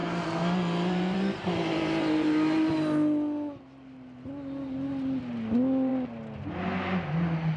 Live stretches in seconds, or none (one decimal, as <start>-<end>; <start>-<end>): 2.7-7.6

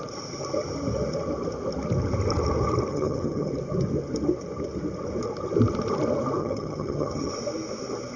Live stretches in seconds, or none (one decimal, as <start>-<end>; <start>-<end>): 0.0-2.9; 3.5-6.4; 7.3-8.2

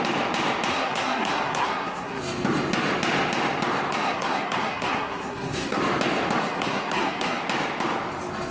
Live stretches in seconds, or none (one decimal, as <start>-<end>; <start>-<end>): 0.0-0.7; 2.2-3.9; 5.8-6.4; 7.4-8.5

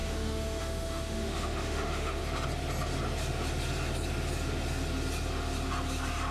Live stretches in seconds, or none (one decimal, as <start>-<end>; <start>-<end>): 2.2-6.3

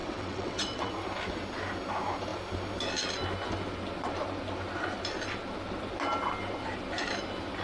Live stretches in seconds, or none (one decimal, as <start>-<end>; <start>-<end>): 0.9-7.6

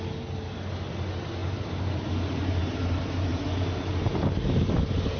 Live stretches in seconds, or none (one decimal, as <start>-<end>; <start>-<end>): 0.0-1.4; 2.1-2.6; 3.3-5.2

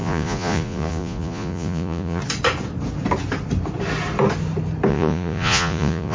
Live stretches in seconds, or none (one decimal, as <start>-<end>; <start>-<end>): 2.2-4.9